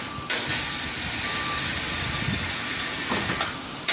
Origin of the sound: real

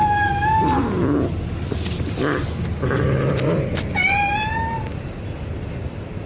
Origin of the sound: real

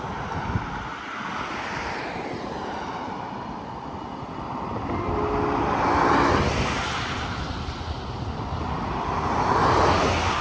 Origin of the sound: real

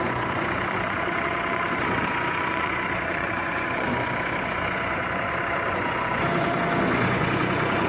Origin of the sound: fake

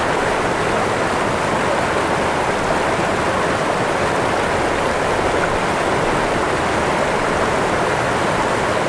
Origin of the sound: real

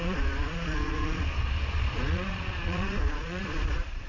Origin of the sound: fake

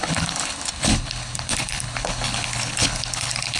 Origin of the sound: fake